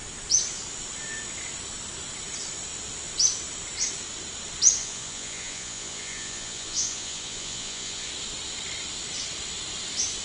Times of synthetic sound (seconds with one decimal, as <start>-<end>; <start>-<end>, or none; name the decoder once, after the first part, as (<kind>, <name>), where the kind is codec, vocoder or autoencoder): 4.8-8.1 (vocoder, Vocos)